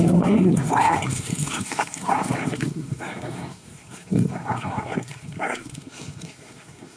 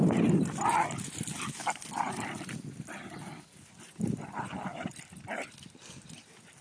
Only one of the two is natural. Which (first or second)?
second